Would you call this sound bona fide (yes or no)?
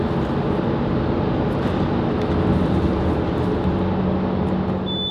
yes